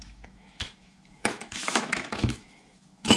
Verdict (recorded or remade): remade